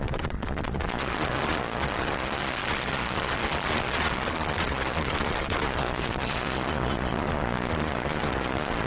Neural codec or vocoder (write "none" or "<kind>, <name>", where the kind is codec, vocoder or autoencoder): vocoder, Vocos